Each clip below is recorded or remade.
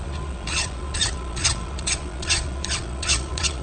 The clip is remade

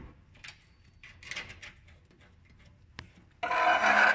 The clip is recorded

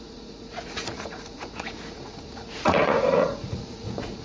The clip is remade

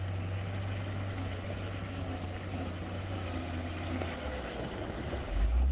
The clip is recorded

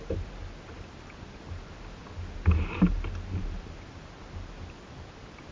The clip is recorded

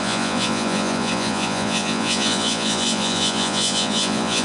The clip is remade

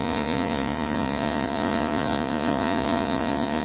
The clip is remade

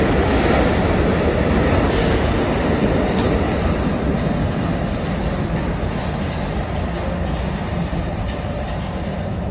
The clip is recorded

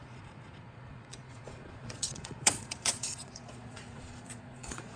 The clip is remade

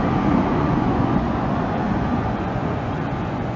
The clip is remade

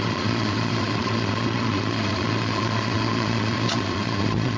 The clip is remade